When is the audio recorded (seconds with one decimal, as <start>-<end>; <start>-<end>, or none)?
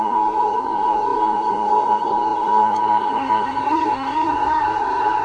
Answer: none